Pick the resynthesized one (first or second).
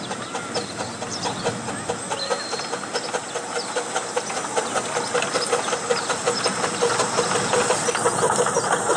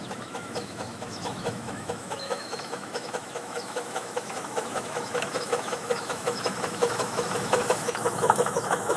second